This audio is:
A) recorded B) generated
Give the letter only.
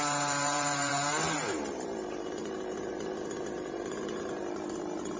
B